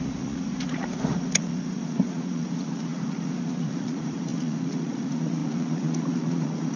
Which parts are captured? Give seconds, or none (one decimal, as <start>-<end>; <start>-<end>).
none